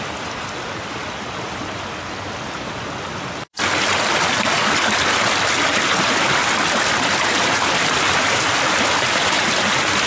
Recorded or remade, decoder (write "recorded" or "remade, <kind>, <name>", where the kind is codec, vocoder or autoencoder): recorded